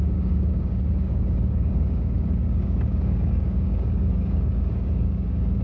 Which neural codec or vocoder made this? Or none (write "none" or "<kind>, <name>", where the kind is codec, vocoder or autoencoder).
codec, DAC